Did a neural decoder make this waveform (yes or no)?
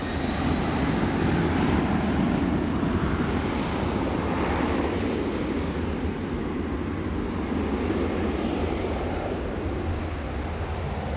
no